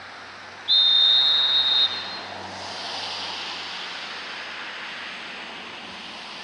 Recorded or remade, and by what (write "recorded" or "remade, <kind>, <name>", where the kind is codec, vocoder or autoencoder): recorded